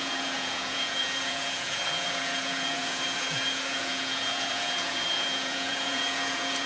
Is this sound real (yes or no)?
no